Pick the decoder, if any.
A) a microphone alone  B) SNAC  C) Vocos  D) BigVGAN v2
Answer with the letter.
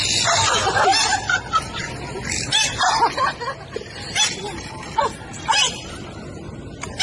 A